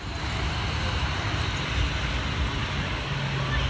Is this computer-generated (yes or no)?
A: no